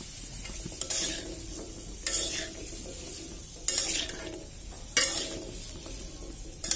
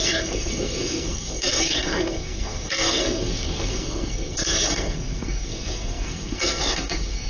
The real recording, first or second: first